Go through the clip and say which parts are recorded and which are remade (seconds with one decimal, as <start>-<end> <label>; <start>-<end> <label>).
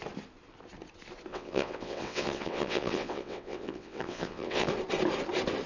0.0-1.3 recorded; 1.3-4.7 remade; 4.7-5.7 recorded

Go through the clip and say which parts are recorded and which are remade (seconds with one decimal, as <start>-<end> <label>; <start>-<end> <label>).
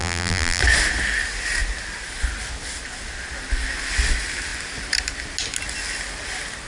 0.0-0.6 remade; 0.6-6.7 recorded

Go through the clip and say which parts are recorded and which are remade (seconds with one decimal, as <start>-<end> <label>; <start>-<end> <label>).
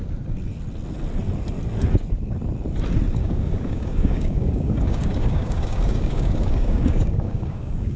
0.0-3.2 recorded; 3.2-8.0 remade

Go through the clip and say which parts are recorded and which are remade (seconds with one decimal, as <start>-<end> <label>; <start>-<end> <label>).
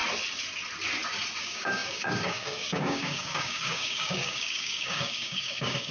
0.0-1.4 recorded; 1.4-5.9 remade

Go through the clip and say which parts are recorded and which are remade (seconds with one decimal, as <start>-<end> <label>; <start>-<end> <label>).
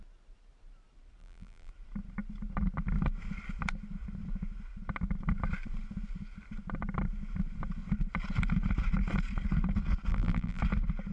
0.0-1.2 recorded; 1.2-1.7 remade; 1.7-10.1 recorded; 10.1-10.6 remade; 10.6-11.1 recorded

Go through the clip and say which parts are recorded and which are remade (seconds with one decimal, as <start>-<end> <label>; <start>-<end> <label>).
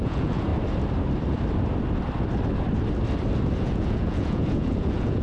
0.0-0.5 remade; 0.5-3.6 recorded; 3.6-5.2 remade